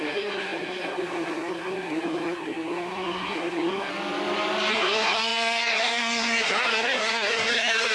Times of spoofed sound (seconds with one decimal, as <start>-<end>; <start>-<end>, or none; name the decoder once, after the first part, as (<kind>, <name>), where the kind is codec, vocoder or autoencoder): 0.0-3.9 (codec, SNAC); 4.7-7.9